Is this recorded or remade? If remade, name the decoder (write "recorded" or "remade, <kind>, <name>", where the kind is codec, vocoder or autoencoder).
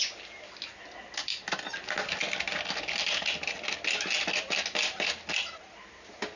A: recorded